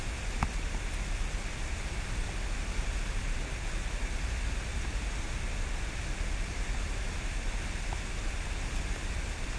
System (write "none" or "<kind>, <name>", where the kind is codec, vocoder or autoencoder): none